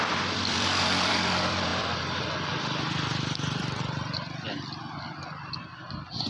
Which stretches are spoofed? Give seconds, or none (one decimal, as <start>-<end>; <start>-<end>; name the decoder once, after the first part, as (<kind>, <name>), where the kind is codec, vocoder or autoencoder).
0.0-6.3 (vocoder, BigVGAN v2)